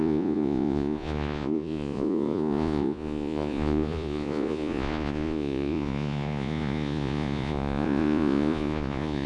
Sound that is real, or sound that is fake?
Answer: fake